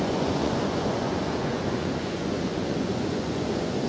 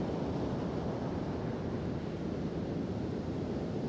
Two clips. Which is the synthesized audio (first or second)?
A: first